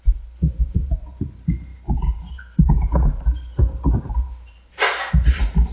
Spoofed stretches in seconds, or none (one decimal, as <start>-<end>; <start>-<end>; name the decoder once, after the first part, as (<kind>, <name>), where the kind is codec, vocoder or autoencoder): 0.0-5.7 (vocoder, BigVGAN v2)